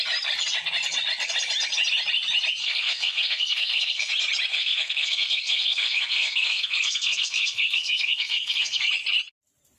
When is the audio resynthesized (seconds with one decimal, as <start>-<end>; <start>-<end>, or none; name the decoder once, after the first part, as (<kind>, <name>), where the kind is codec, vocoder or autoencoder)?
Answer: 2.6-4.1 (codec, SNAC); 4.5-8.9